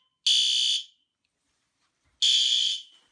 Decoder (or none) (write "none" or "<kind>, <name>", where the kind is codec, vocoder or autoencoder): none